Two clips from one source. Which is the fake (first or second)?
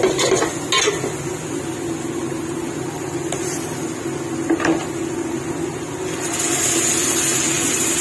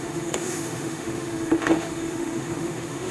second